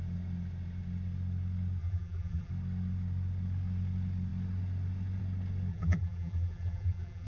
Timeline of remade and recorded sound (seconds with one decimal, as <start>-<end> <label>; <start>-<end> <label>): 0.0-1.8 recorded; 1.8-2.5 remade; 2.5-5.7 recorded; 5.7-7.3 remade